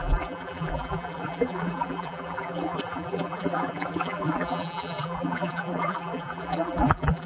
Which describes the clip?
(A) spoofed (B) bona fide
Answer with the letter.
A